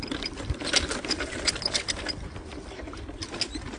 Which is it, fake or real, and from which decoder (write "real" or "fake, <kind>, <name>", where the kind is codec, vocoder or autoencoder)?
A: real